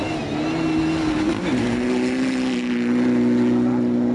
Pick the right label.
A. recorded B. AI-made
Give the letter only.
A